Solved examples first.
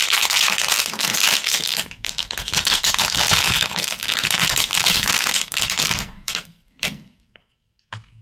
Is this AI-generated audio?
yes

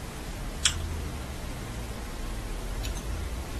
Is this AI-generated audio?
no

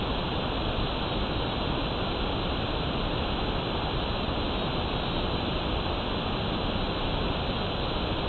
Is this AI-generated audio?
no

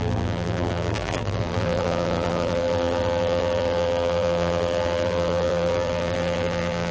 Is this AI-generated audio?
yes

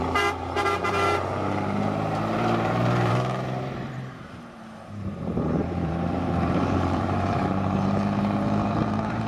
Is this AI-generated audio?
yes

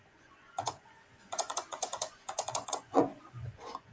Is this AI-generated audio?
yes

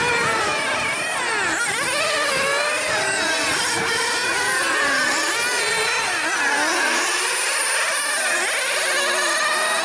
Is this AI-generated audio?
no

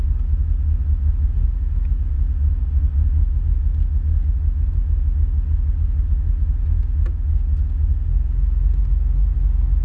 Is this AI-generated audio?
no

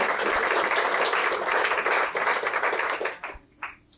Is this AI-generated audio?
no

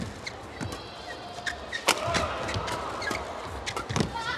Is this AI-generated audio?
no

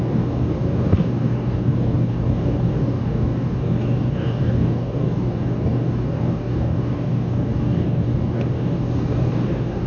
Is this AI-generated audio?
yes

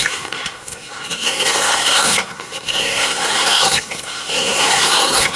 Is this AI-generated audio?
yes